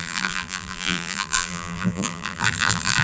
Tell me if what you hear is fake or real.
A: fake